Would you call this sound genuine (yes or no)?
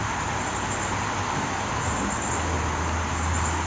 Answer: yes